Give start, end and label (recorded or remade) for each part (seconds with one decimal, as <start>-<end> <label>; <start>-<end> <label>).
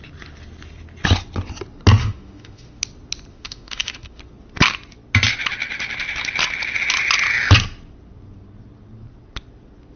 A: 0.0-2.0 recorded; 2.0-2.8 remade; 2.8-3.3 recorded; 3.3-4.2 remade; 4.2-10.0 recorded